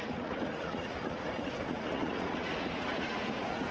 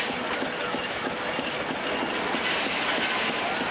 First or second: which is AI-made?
first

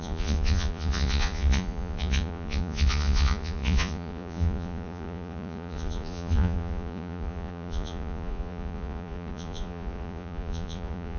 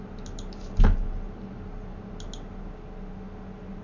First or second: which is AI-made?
first